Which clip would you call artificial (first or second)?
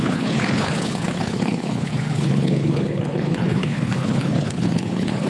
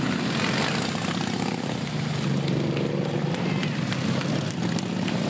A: first